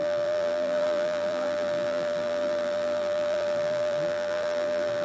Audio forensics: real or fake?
fake